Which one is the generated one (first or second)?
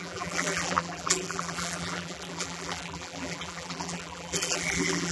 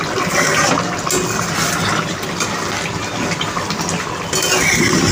first